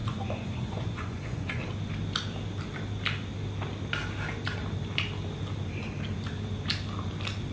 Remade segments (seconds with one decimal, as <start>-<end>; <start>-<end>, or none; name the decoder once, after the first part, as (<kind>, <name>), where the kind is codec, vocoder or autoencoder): 0.0-1.6 (vocoder, Vocos)